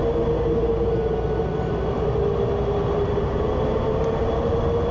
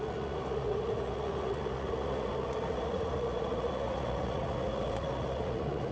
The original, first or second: first